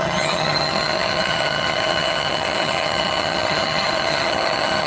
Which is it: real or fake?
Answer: fake